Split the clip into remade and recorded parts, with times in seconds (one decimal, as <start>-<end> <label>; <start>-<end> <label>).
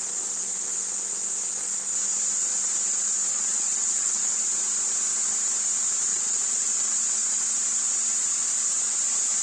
0.0-3.3 recorded; 3.3-4.4 remade; 4.4-6.1 recorded; 6.1-6.8 remade; 6.8-9.4 recorded